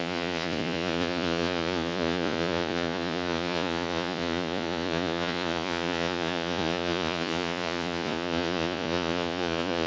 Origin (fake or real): fake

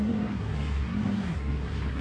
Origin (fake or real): fake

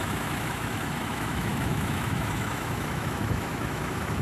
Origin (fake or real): fake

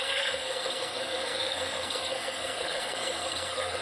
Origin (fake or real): fake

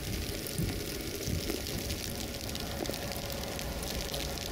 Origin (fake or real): real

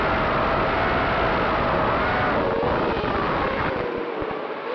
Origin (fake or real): real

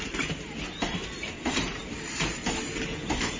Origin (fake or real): real